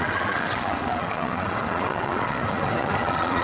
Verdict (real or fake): fake